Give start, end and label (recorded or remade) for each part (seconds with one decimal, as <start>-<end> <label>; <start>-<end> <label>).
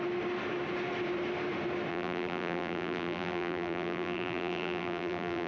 0.0-1.9 recorded; 1.9-5.5 remade